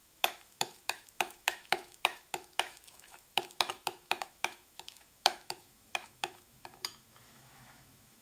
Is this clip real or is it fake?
fake